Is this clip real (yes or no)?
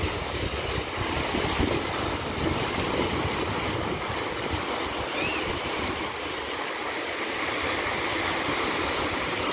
yes